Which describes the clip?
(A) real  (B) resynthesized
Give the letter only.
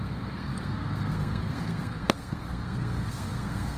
B